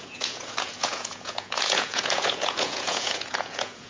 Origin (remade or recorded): remade